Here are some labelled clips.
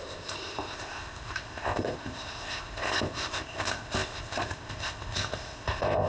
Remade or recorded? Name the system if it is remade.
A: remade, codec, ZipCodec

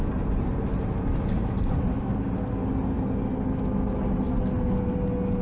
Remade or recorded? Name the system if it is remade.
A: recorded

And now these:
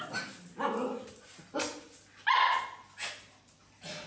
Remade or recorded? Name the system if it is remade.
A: recorded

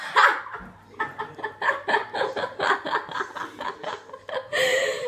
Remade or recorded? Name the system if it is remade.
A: recorded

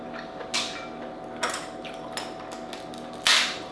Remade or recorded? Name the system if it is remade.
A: recorded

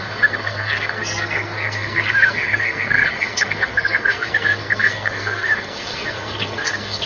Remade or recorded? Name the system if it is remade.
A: remade, codec, SNAC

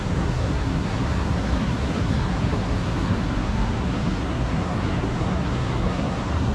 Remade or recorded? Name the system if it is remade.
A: remade, codec, SNAC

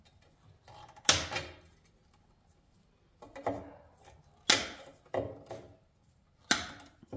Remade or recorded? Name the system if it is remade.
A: recorded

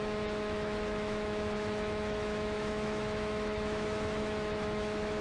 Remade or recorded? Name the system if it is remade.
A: remade, autoencoder, DAC-VAE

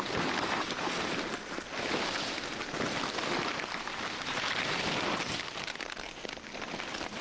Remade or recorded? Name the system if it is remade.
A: remade, vocoder, BigVGAN v2